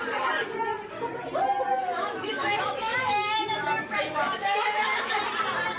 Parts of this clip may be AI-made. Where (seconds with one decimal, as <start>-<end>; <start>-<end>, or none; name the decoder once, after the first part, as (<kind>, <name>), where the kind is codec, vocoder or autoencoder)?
1.7-5.2 (autoencoder, DAC-VAE)